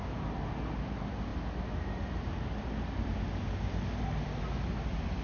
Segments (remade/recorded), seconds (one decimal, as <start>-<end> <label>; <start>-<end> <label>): 0.0-5.2 recorded